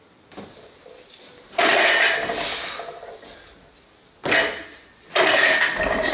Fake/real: real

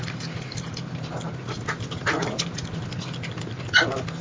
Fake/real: real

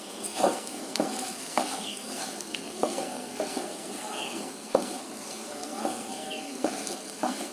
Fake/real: fake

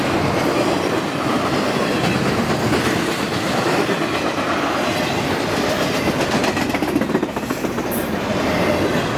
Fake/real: fake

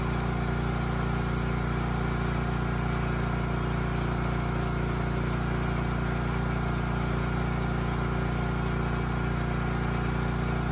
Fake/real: real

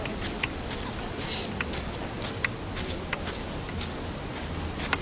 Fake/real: real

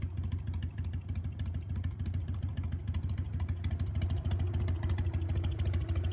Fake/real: real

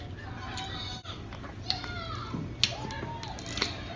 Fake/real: real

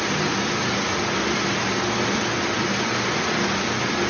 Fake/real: real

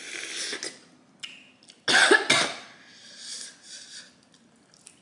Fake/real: real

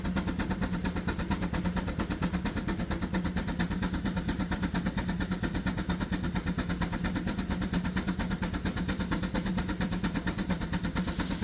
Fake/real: real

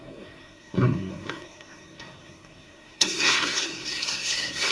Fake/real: fake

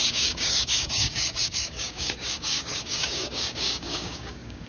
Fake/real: fake